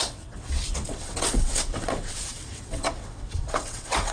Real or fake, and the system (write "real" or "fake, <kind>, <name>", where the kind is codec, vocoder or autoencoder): fake, vocoder, WaveNeXt